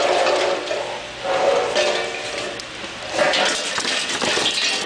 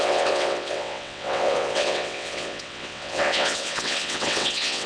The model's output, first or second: second